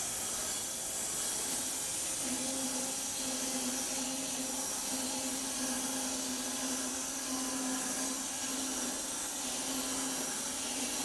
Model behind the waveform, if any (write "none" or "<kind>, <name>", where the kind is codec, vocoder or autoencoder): none